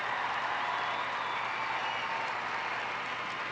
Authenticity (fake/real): real